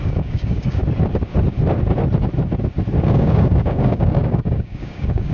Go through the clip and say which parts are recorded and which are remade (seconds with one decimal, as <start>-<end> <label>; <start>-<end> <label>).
0.0-0.8 remade; 0.8-3.0 recorded; 3.0-5.3 remade